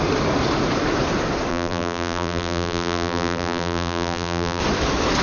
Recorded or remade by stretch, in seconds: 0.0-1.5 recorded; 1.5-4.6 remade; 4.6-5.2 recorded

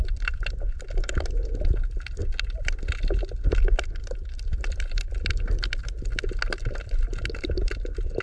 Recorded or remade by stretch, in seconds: 0.0-8.2 recorded

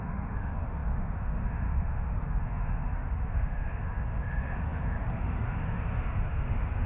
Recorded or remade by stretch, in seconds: 0.0-6.9 remade

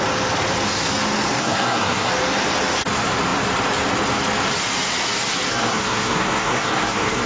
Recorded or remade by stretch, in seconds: 0.0-1.4 recorded; 1.4-2.1 remade; 2.1-5.5 recorded; 5.5-7.3 remade

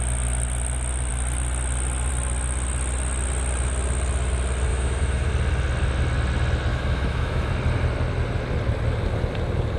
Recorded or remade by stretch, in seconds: 0.0-4.7 recorded; 4.7-5.3 remade; 5.3-6.7 recorded; 6.7-7.5 remade; 7.5-9.8 recorded

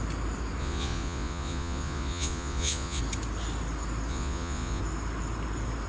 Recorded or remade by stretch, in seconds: 0.0-0.6 recorded; 0.6-3.0 remade; 3.0-4.1 recorded; 4.1-4.8 remade; 4.8-5.9 recorded

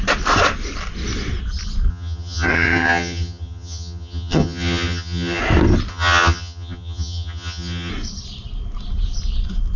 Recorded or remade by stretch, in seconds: 0.0-1.9 recorded; 1.9-5.4 remade; 5.4-5.9 recorded; 5.9-7.9 remade; 7.9-9.8 recorded